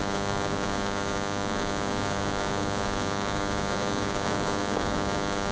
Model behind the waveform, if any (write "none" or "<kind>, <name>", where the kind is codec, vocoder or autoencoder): codec, DAC